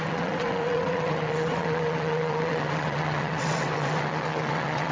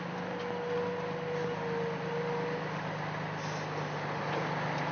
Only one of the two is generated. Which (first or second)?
first